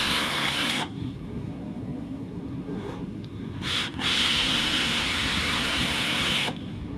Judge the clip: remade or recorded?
remade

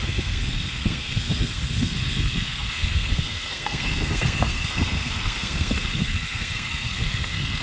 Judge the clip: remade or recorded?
remade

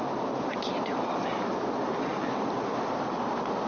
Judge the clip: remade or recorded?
recorded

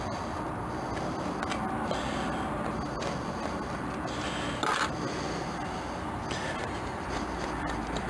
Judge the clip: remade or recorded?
recorded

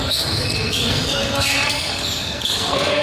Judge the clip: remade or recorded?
remade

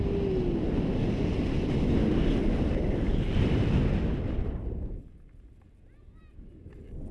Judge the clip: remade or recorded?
recorded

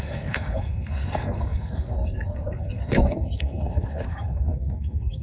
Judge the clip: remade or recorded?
remade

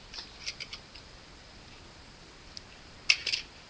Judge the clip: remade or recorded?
recorded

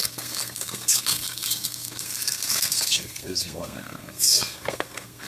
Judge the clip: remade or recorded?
remade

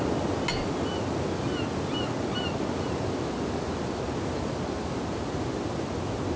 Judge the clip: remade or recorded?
recorded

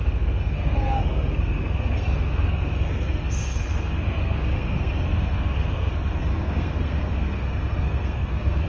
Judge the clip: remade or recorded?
remade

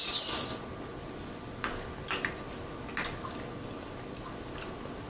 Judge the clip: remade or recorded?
recorded